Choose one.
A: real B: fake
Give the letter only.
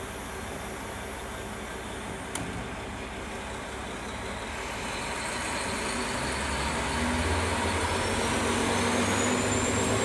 A